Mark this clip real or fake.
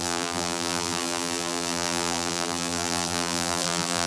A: fake